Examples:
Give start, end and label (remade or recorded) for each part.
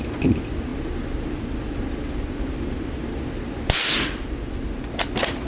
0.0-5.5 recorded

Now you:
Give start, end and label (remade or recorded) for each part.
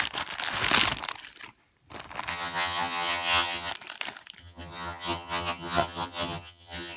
0.0-2.3 recorded; 2.3-3.7 remade; 3.7-4.4 recorded; 4.4-7.0 remade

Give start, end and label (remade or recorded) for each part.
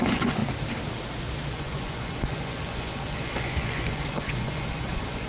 0.0-0.4 remade; 0.4-1.5 recorded; 1.5-5.3 remade